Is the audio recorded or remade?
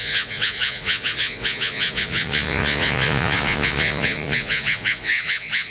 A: remade